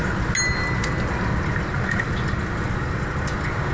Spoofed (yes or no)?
no